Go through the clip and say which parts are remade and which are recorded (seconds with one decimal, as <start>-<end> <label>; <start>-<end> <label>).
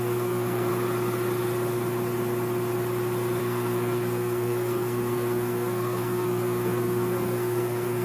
0.0-0.7 remade; 0.7-3.4 recorded; 3.4-8.0 remade